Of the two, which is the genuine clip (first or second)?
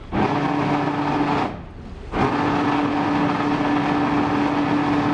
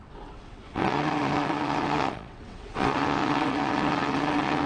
first